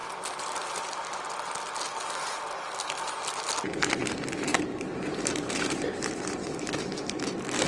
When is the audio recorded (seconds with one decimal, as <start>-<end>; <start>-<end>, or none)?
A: 0.0-4.5; 6.0-7.7